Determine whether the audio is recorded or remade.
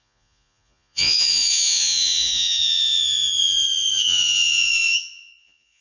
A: remade